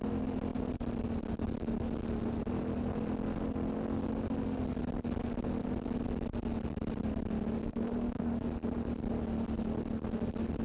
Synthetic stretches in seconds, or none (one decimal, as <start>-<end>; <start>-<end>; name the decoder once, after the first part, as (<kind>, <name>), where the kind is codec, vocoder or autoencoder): 7.6-8.3 (codec, SNAC)